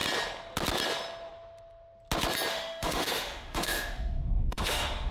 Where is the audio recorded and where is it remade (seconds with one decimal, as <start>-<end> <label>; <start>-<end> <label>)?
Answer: 0.0-2.5 recorded; 2.5-5.1 remade